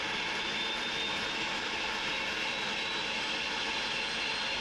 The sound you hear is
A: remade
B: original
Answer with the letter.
B